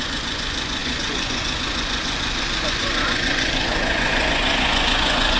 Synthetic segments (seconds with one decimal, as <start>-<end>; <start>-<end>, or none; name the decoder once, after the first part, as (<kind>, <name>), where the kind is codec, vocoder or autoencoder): 0.0-5.4 (vocoder, Vocos)